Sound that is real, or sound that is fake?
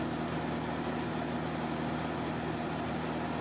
real